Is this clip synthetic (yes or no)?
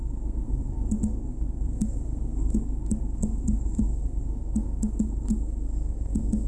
yes